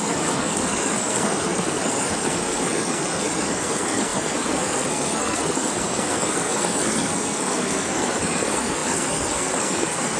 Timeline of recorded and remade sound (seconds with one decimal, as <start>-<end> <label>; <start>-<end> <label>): 0.0-10.2 remade